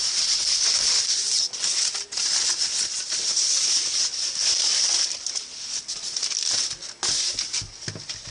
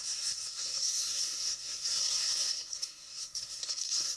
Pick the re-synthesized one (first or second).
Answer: second